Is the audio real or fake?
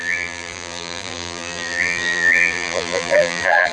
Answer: fake